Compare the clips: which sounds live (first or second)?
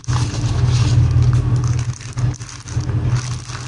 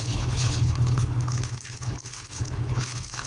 first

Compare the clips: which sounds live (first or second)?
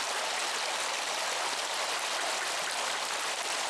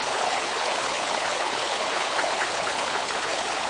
first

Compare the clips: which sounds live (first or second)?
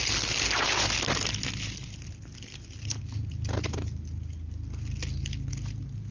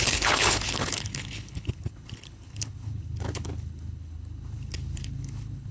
first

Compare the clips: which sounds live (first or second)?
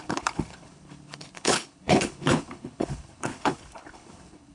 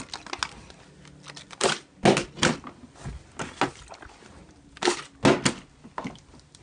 second